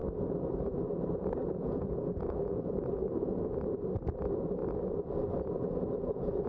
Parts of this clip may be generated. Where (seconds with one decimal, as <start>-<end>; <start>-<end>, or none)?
1.4-2.7; 5.9-6.5